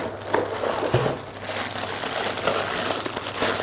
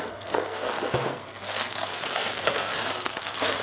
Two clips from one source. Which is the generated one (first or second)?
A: second